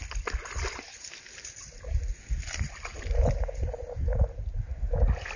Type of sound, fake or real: real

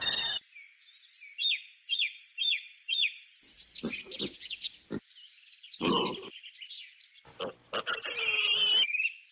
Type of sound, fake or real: real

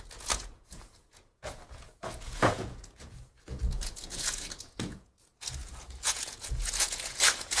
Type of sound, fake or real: fake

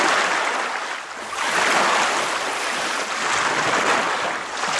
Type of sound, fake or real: real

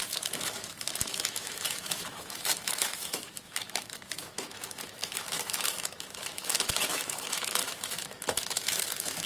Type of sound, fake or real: fake